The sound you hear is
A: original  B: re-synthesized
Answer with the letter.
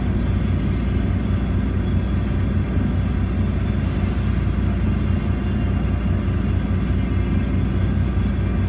A